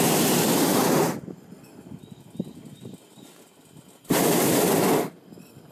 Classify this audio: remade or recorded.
recorded